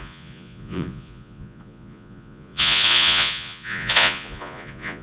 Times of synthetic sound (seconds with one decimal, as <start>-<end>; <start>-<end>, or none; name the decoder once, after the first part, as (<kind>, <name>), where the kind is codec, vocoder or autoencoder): 0.0-5.0 (vocoder, Vocos)